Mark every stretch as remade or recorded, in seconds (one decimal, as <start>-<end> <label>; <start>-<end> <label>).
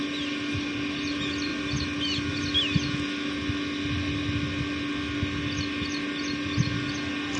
0.0-7.4 recorded